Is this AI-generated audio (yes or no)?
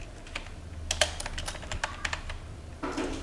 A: no